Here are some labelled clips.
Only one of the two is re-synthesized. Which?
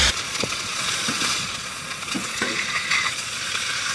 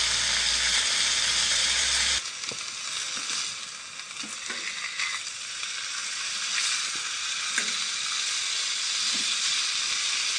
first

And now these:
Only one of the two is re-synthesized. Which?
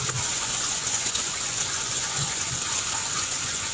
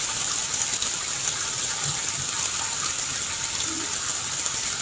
first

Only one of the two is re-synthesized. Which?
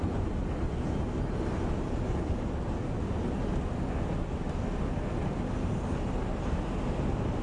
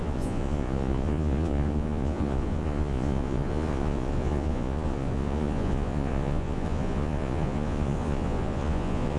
second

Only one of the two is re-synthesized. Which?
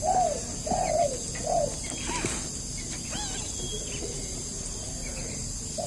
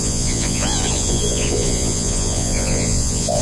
second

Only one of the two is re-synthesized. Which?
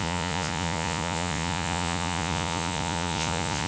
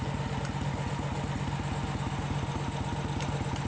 first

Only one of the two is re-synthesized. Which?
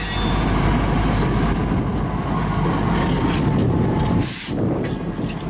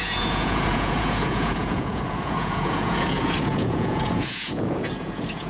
second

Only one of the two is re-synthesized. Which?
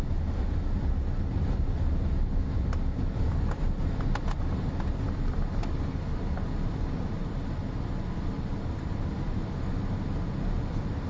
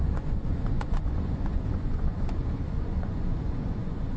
second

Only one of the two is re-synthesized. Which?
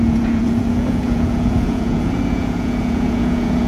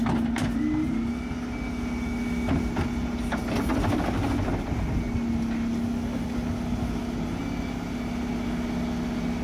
first